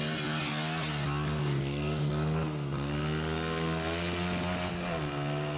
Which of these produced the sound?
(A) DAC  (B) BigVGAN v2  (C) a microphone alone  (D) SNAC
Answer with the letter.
C